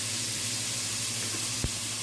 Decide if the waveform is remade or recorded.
remade